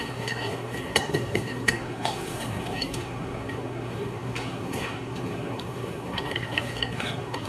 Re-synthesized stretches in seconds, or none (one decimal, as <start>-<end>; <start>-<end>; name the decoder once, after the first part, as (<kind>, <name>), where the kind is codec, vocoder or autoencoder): 0.0-7.5 (codec, SNAC)